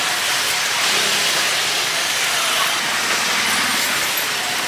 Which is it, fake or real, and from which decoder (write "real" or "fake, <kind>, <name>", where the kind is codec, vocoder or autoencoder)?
real